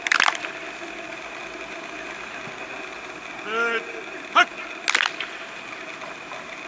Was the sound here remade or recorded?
recorded